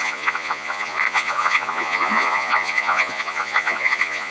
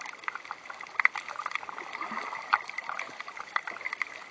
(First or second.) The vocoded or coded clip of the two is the first